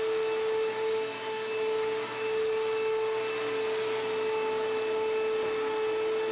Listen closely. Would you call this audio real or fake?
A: real